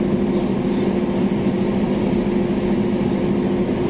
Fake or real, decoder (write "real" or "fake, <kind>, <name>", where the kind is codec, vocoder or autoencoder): real